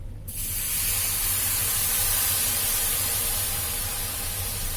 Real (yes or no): yes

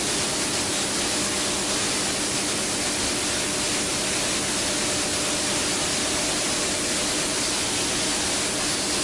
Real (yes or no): yes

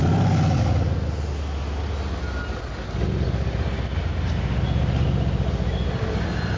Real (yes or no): yes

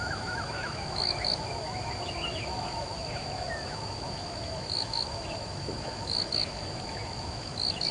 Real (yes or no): no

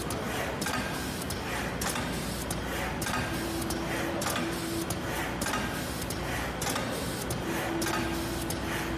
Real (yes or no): yes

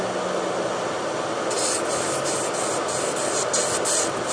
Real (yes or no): yes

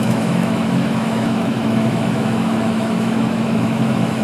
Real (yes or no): no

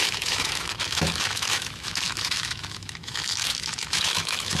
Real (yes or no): no